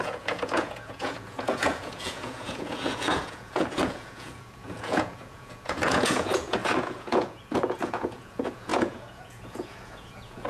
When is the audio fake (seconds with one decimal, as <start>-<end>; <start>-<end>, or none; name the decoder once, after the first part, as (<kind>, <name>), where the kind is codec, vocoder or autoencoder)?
0.0-10.5 (vocoder, Vocos)